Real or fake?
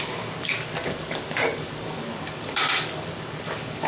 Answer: fake